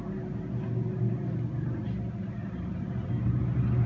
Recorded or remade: recorded